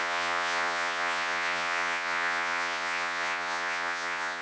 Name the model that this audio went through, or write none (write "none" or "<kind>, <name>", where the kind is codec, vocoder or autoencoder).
vocoder, Vocos